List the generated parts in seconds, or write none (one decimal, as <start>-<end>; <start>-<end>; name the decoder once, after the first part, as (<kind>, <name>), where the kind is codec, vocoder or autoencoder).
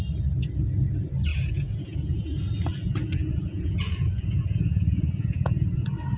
1.3-2.5 (vocoder, Vocos); 3.2-6.2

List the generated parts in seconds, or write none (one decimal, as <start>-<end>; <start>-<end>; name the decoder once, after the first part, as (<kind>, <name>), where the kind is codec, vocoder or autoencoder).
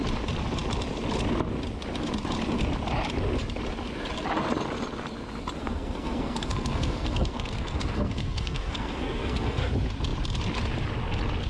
5.6-9.7 (codec, SNAC)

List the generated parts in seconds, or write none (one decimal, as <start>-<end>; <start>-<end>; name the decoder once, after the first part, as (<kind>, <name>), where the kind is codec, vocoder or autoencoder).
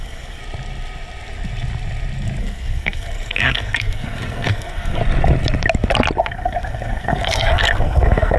0.0-0.4 (codec, SNAC); 2.4-5.0; 6.2-8.4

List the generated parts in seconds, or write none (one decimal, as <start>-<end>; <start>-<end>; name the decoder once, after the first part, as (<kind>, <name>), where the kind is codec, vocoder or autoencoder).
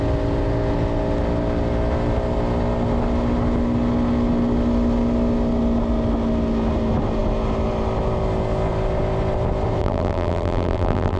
9.8-11.2 (vocoder, BigVGAN v2)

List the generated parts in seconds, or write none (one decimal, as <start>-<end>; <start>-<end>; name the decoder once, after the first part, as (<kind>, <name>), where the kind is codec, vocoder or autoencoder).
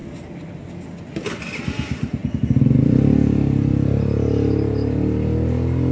none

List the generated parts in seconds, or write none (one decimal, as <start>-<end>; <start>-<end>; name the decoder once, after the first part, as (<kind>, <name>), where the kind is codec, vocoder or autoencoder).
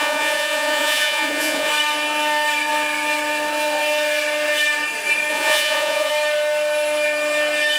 0.0-1.7 (vocoder, Vocos); 5.3-6.1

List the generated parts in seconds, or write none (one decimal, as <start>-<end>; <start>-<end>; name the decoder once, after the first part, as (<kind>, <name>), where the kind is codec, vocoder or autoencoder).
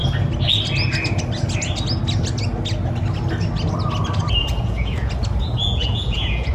4.4-5.1 (vocoder, Vocos); 5.6-6.5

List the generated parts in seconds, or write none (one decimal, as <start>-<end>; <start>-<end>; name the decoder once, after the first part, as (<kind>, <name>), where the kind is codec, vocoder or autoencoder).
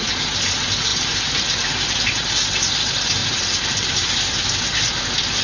0.9-2.6 (vocoder, BigVGAN v2); 3.2-5.0